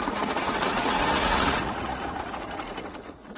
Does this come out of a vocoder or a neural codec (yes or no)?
yes